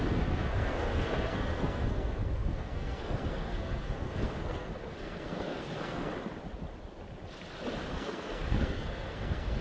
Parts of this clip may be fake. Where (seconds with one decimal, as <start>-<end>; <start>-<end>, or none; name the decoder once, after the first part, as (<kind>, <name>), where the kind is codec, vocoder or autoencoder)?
0.0-6.1 (codec, SNAC); 7.9-9.6